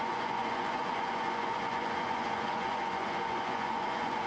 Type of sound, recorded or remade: remade